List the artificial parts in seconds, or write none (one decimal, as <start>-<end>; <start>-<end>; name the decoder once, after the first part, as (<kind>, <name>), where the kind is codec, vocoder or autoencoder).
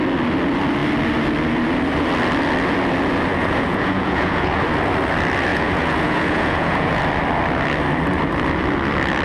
3.3-4.6 (vocoder, Vocos); 5.5-7.0